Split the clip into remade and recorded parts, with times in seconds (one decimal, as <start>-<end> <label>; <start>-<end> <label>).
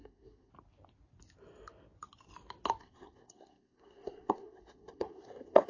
0.0-0.5 remade; 0.5-2.8 recorded; 2.8-5.7 remade